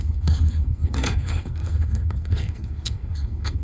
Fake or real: fake